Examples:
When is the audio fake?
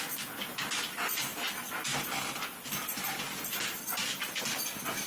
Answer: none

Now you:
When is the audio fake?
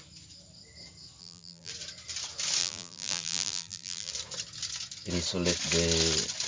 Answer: 1.2-1.7 (vocoder, BigVGAN v2); 2.6-4.1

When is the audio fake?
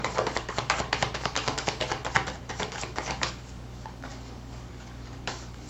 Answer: 0.0-2.0 (codec, DAC); 2.5-5.7